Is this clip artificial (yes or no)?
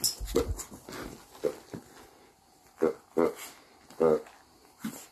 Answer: no